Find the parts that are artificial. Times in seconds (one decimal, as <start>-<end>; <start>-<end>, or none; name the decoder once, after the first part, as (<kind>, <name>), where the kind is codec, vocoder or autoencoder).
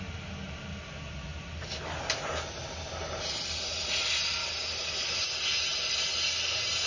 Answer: none